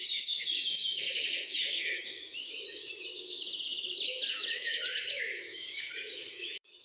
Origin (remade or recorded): remade